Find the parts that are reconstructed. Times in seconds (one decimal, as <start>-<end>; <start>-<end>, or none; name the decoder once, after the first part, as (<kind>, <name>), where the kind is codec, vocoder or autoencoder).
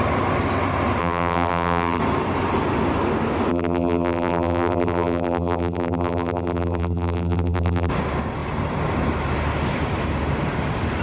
1.0-2.0 (vocoder, BigVGAN v2); 3.5-7.9